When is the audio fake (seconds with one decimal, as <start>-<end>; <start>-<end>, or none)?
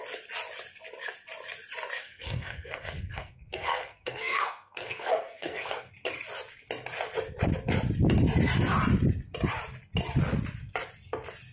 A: 2.0-5.9